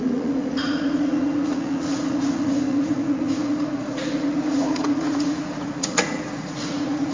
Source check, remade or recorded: remade